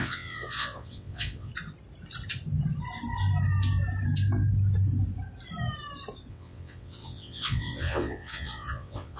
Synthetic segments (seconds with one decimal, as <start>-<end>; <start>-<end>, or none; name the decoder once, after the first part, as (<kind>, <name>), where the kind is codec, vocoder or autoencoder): 0.0-1.5 (vocoder, WaveNeXt); 6.3-9.2